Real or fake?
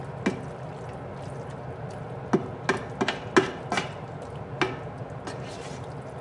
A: real